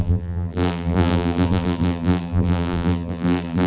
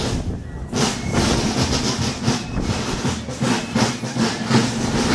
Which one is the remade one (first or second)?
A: first